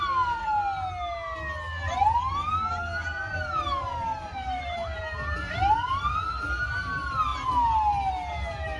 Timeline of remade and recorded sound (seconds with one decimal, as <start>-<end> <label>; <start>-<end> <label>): 0.0-3.1 recorded; 3.1-5.0 remade; 5.0-8.8 recorded